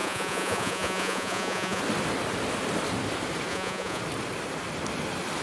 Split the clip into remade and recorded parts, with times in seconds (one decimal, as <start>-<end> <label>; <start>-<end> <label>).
0.0-1.8 remade; 1.8-3.5 recorded; 3.5-4.0 remade; 4.0-5.4 recorded